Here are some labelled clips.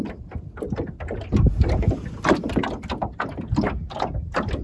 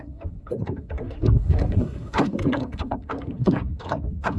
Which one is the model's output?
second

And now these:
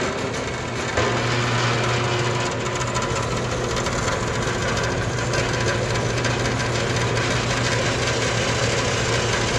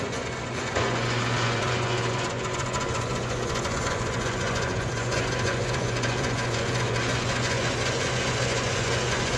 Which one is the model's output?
second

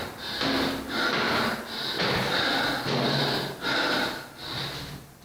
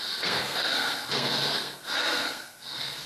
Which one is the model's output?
second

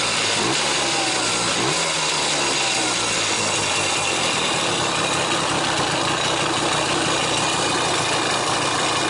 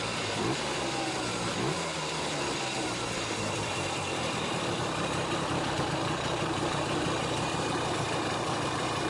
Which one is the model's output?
second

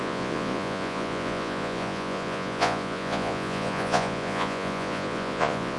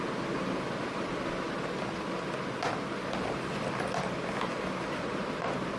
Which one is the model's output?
first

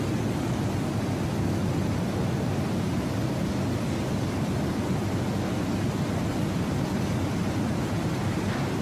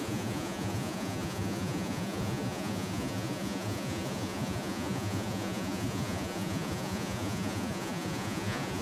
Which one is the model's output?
second